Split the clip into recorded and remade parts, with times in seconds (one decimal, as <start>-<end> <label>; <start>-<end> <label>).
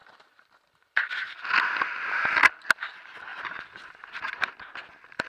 0.0-1.8 remade; 1.8-3.3 recorded; 3.3-5.3 remade